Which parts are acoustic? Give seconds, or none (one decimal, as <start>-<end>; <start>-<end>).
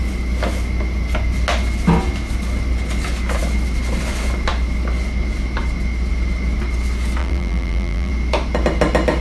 0.0-7.2; 8.1-9.2